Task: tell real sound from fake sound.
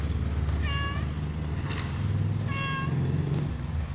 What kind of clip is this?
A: real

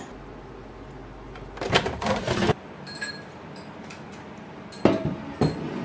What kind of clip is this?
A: real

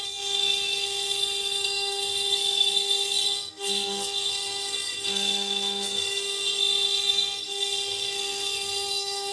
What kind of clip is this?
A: fake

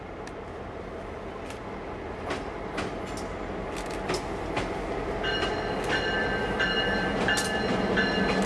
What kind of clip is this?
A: real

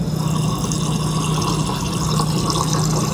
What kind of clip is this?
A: real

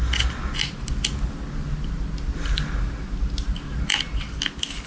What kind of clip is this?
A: real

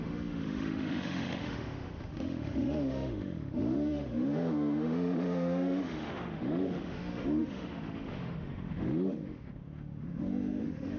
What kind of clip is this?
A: fake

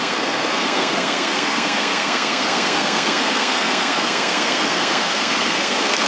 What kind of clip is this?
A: fake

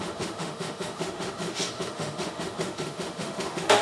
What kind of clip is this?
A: fake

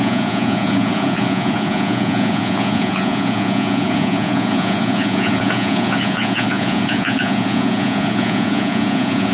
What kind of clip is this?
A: fake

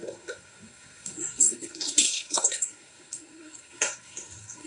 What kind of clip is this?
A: fake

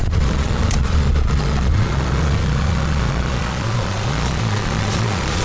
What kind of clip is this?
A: fake